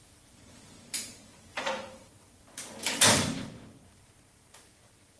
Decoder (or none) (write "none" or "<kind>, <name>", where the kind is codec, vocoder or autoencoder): vocoder, BigVGAN v2